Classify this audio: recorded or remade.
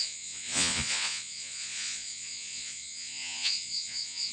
remade